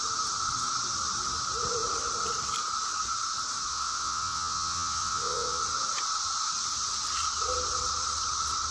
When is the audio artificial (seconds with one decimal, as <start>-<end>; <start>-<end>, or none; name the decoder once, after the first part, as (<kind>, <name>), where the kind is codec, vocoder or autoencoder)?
3.7-5.6 (vocoder, WaveNeXt)